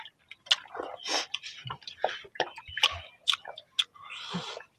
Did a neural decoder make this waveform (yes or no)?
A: no